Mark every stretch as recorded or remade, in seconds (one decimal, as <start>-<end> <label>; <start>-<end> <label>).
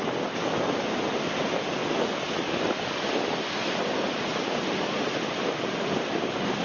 0.0-6.6 recorded